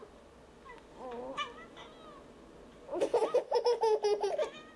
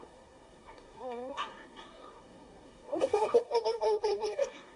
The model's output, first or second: second